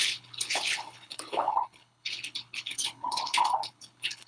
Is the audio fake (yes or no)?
yes